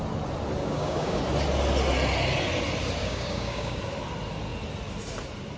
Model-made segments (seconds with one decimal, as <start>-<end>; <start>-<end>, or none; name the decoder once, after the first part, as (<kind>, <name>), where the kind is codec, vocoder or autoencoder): 0.6-1.2 (codec, DAC); 3.0-3.8